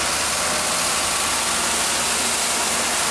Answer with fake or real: real